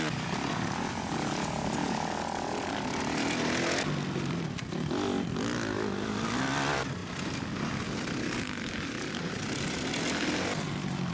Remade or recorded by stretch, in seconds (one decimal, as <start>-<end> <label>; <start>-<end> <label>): 0.0-11.1 recorded